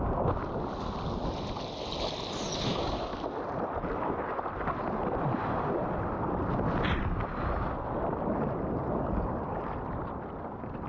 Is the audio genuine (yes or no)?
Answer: yes